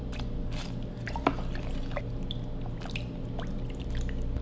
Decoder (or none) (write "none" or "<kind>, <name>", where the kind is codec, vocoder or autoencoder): none